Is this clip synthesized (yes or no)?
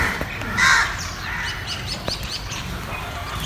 yes